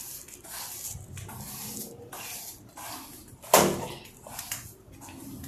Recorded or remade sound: recorded